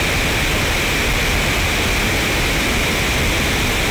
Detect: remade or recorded recorded